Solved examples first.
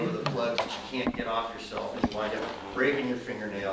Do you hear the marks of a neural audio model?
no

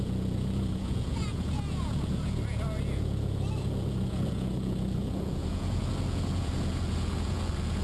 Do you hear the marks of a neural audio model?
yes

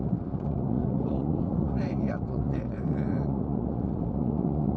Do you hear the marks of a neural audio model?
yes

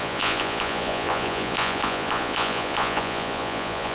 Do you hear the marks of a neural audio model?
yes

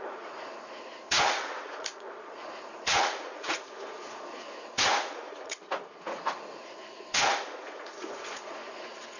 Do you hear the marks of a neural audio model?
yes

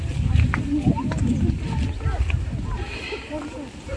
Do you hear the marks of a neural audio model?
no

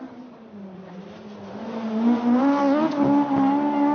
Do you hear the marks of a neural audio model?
no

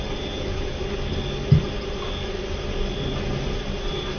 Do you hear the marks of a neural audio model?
no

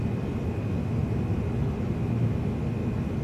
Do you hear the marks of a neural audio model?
no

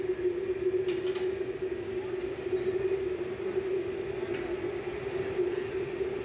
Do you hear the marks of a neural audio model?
no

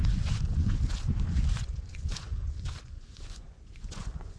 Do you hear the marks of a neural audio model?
yes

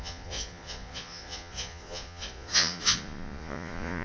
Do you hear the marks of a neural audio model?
yes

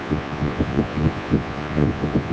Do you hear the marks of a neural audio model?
yes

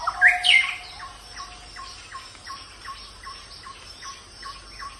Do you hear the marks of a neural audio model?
no